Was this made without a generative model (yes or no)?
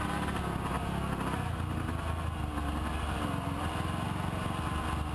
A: yes